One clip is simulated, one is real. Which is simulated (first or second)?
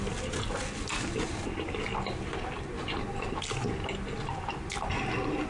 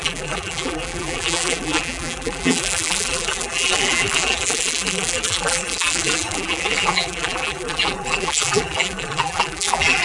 second